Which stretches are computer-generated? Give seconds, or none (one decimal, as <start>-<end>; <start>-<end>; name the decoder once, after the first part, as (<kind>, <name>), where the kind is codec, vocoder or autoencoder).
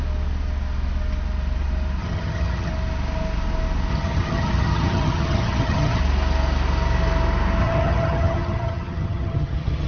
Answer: 2.0-2.7 (vocoder, HiFi-GAN); 3.9-6.0; 7.6-9.9